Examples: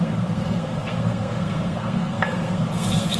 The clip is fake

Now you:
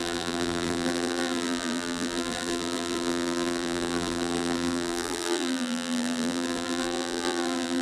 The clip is fake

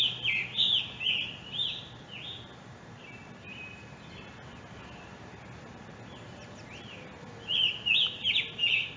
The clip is real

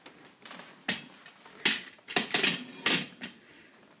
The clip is real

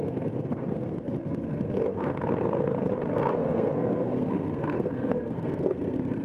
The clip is fake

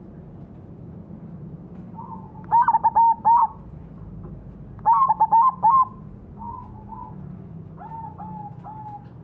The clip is real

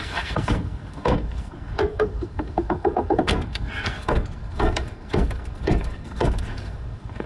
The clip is fake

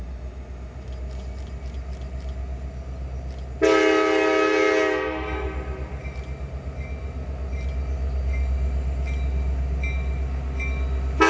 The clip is real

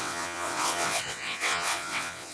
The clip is fake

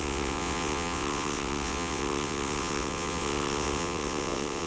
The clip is fake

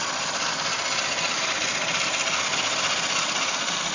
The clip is real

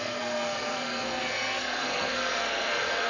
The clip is fake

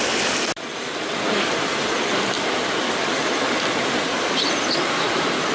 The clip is real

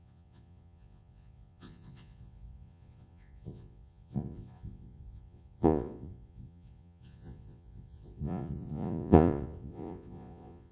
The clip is fake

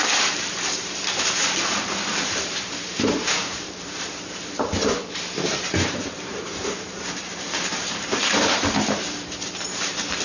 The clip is fake